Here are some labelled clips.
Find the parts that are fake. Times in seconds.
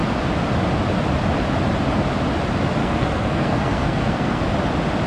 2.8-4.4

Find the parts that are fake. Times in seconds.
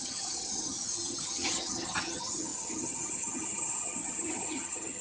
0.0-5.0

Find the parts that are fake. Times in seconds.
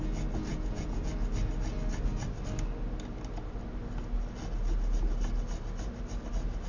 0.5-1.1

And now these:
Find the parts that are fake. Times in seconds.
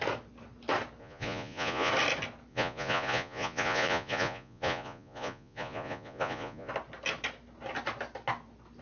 1.0-1.9; 2.5-6.7